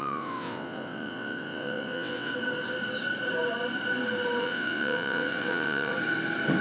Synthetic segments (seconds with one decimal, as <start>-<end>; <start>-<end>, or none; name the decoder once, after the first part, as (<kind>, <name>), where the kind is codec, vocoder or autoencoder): 0.0-2.3 (vocoder, WaveNeXt); 4.4-5.9